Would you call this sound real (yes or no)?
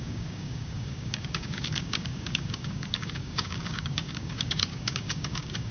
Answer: no